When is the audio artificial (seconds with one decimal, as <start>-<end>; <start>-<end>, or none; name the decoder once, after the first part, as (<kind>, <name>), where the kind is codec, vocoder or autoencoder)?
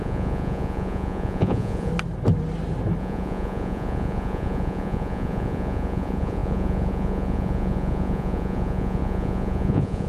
0.0-1.9 (vocoder, Vocos); 3.0-10.1